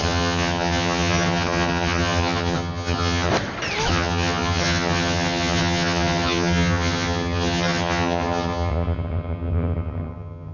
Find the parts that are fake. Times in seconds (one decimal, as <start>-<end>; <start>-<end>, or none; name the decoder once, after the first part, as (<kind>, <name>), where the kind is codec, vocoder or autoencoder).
0.0-3.3 (vocoder, HiFi-GAN); 3.9-10.5